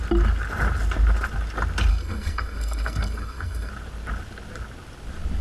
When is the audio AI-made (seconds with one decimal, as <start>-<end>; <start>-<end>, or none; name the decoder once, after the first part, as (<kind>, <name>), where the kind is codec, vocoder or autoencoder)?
1.9-3.7 (codec, SNAC)